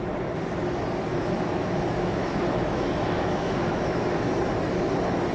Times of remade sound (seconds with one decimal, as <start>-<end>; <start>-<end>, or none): 1.1-4.3